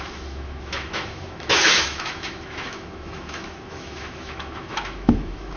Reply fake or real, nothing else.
fake